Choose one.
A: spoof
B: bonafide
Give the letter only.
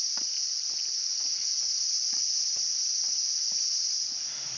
B